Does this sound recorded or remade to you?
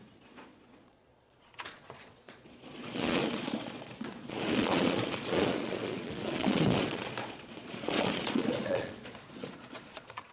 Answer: remade